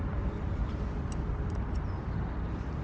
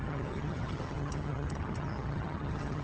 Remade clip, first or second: second